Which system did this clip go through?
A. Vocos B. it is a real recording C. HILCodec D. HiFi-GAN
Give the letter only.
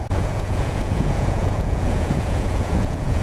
A